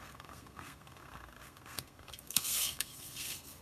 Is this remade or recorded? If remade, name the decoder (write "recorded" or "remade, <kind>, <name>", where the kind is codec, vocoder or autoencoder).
remade, codec, SNAC